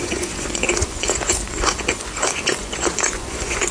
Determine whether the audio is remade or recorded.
remade